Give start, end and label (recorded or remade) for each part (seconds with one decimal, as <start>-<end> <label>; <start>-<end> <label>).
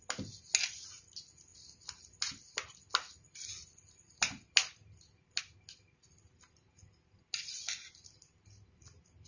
0.0-9.3 recorded